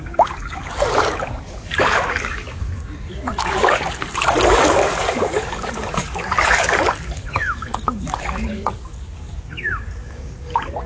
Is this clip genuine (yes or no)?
no